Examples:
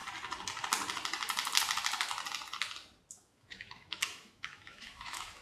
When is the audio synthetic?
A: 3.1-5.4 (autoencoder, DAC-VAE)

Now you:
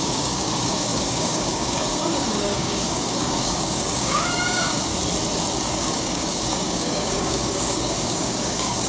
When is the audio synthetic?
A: 0.0-4.9 (codec, DAC); 5.6-8.9

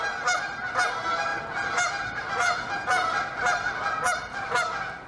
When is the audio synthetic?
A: none